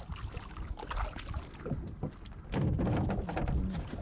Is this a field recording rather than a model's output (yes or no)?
yes